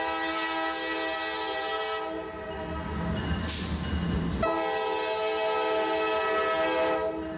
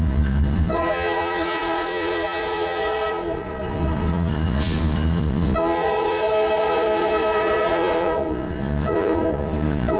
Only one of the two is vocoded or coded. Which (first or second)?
second